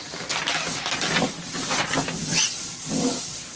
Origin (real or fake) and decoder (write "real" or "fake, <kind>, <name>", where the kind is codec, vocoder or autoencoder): real